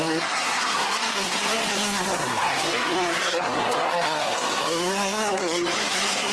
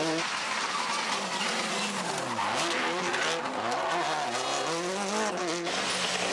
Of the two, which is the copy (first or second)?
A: first